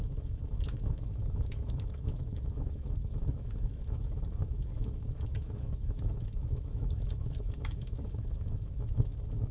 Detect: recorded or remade remade